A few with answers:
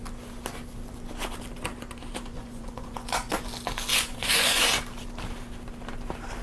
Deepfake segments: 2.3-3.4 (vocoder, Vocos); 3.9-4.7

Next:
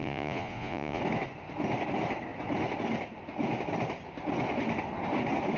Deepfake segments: 0.0-1.0 (vocoder, Vocos)

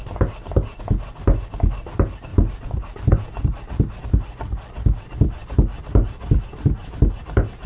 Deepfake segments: none

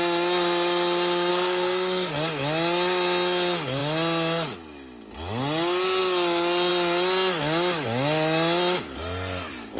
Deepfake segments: 1.3-2.1 (codec, SNAC)

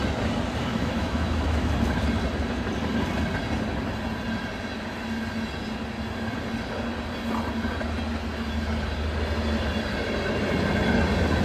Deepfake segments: 0.7-1.7 (autoencoder, DAC-VAE)

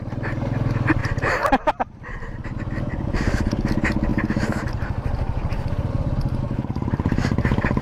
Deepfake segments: 1.0-1.7 (vocoder, BigVGAN v2)

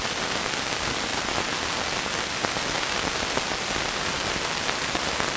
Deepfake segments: none